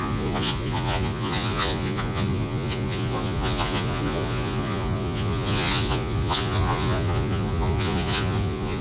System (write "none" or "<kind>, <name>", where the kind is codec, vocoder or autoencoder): vocoder, Vocos